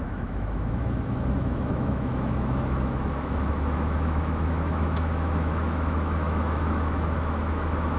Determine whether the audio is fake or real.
fake